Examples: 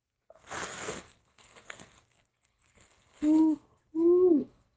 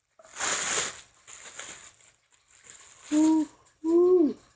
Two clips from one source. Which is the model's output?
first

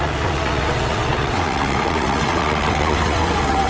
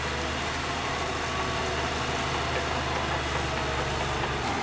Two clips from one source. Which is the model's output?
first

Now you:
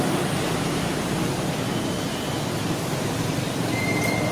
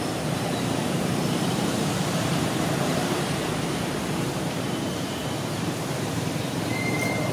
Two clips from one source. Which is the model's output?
second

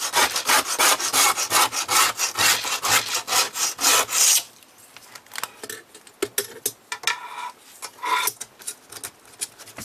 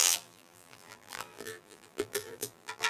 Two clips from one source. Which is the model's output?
second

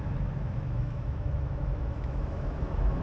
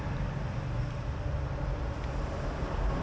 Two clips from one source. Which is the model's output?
first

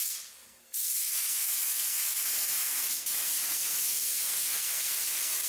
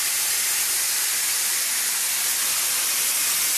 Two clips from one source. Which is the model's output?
first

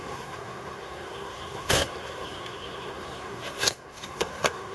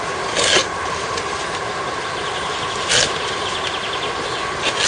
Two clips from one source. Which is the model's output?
first